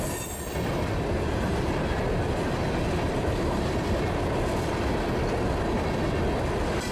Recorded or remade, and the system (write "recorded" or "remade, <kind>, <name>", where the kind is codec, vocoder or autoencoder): recorded